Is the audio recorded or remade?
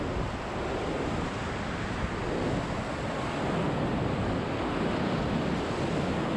recorded